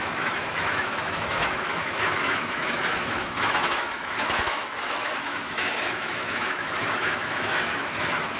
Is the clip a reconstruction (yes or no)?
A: yes